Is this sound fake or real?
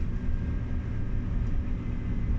real